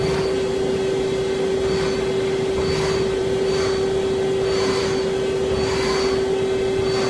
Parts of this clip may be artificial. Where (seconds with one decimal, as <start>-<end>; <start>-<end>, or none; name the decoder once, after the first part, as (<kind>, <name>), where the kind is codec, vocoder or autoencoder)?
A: none